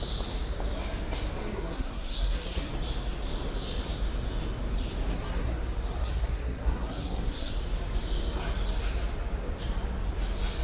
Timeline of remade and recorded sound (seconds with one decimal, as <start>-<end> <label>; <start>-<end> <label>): 0.0-1.4 recorded; 1.4-2.7 remade; 2.7-5.1 recorded; 5.1-5.6 remade; 5.6-6.0 recorded; 6.0-7.5 remade; 7.5-10.6 recorded